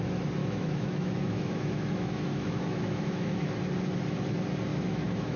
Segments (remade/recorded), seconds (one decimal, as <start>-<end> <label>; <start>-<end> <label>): 0.0-0.4 recorded; 0.4-3.6 remade; 3.6-4.7 recorded; 4.7-5.4 remade

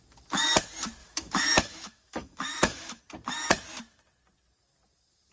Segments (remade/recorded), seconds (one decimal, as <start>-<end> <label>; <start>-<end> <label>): 0.0-1.0 recorded; 1.0-3.0 remade; 3.0-5.3 recorded

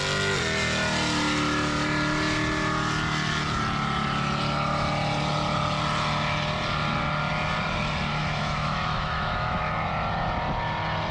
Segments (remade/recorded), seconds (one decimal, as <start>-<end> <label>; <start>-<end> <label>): 0.0-8.2 recorded; 8.2-9.7 remade; 9.7-11.1 recorded

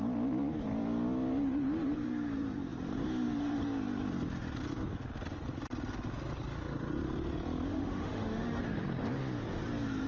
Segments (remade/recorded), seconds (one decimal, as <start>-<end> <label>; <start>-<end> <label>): 0.0-7.7 recorded; 7.7-8.6 remade; 8.6-10.1 recorded